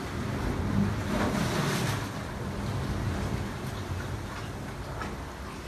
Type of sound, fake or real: real